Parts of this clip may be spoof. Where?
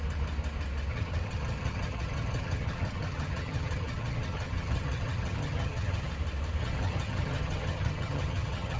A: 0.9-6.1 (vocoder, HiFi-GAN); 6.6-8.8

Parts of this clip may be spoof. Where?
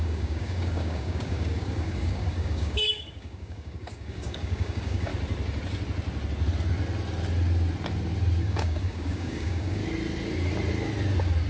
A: 0.0-5.1 (codec, DAC); 8.4-9.8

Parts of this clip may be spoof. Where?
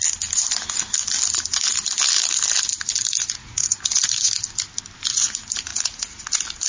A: 3.4-4.0 (vocoder, Vocos); 5.7-6.2